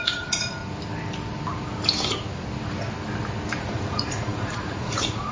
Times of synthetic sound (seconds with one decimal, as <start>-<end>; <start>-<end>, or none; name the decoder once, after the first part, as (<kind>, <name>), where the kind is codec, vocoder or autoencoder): 0.0-0.6 (vocoder, Vocos); 3.6-5.3